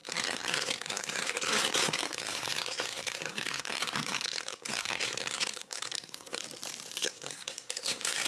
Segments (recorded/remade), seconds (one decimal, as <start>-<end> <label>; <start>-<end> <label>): 0.0-6.4 remade; 6.4-6.9 recorded; 6.9-8.3 remade